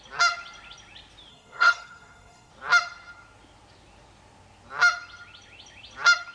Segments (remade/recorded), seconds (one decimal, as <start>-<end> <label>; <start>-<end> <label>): 0.0-1.3 recorded; 1.3-2.5 remade; 2.5-6.3 recorded